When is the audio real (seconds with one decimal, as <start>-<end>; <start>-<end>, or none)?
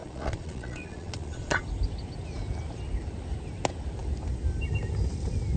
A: 1.6-5.6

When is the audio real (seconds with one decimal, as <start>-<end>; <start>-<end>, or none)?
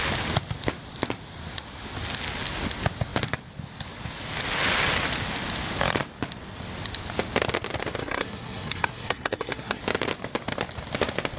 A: 0.0-8.0; 9.8-11.4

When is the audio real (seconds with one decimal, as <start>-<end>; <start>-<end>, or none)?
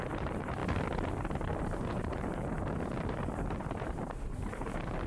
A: 0.6-1.6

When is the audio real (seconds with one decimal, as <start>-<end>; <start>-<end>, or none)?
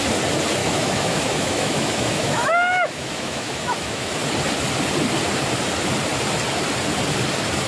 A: 0.0-0.6; 4.1-7.7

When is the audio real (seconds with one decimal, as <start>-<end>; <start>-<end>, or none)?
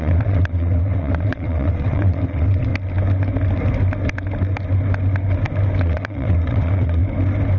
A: 2.7-5.8; 7.0-7.6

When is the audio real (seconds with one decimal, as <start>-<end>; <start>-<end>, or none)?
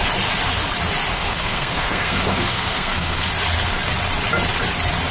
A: 0.0-1.1; 3.3-5.1